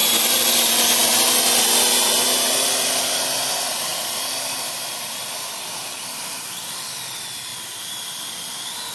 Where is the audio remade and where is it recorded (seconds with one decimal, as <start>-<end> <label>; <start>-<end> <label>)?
0.0-0.5 remade; 0.5-3.9 recorded; 3.9-5.7 remade; 5.7-7.5 recorded; 7.5-8.5 remade; 8.5-8.9 recorded